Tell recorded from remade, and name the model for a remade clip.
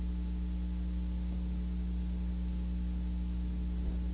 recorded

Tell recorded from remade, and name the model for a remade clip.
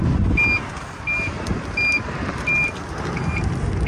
recorded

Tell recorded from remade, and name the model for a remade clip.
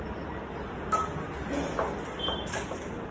recorded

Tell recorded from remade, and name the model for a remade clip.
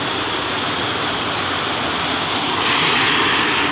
recorded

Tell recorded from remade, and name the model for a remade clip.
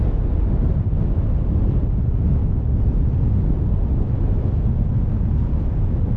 recorded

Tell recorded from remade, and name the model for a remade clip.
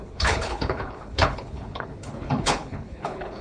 remade, codec, HILCodec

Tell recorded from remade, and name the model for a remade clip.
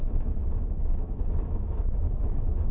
remade, autoencoder, DAC-VAE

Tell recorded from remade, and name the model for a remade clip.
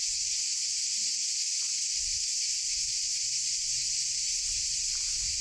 recorded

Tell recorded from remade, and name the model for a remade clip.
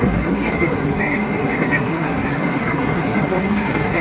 remade, codec, SNAC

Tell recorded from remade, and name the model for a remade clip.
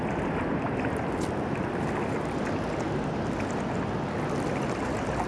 recorded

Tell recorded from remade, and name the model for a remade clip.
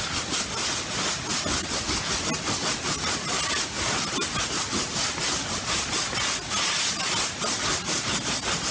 recorded